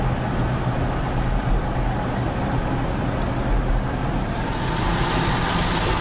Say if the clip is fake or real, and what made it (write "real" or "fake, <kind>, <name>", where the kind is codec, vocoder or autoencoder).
real